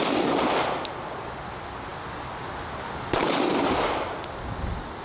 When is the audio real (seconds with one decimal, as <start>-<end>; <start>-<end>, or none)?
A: 0.0-5.0